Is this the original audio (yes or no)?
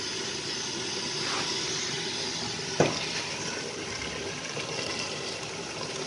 yes